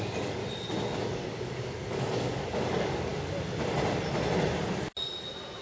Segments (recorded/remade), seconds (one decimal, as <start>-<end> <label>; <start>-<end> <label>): 0.0-0.4 remade; 0.4-1.0 recorded; 1.0-3.1 remade; 3.1-5.6 recorded